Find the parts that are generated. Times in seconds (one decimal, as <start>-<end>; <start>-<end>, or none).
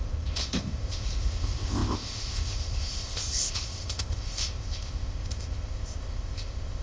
0.0-6.8